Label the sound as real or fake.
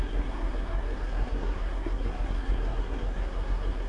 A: fake